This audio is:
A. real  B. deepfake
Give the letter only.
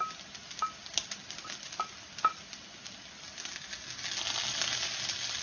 A